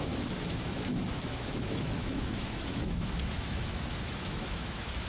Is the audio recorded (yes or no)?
no